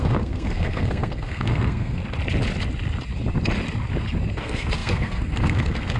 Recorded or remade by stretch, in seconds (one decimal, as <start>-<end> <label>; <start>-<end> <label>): 0.0-2.0 remade; 2.0-4.3 recorded; 4.3-6.0 remade